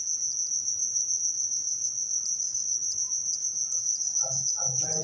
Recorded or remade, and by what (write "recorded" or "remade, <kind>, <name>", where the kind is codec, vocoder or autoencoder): remade, vocoder, Vocos